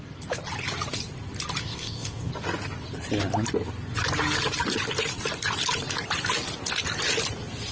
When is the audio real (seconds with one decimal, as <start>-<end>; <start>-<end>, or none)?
0.0-1.6; 2.3-7.7

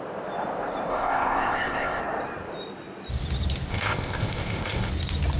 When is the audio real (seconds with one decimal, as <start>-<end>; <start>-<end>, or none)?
0.0-0.9; 2.0-3.7; 4.9-5.4

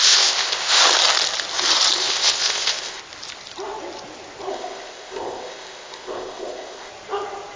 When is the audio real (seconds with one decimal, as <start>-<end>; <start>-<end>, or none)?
0.8-2.0; 3.0-4.5; 6.9-7.6

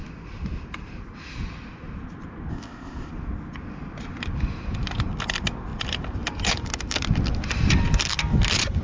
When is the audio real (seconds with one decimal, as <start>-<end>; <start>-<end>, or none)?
0.0-2.5; 3.1-8.8

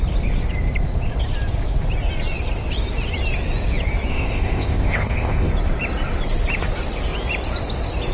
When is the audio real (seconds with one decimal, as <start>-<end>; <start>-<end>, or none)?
0.0-4.1; 5.5-8.1

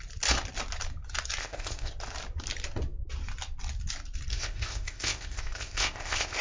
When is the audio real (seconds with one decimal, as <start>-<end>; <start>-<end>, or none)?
0.0-1.4; 1.9-4.3